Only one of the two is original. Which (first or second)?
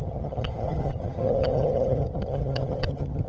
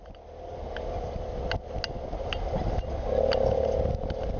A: second